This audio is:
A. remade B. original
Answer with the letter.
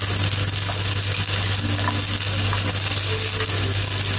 B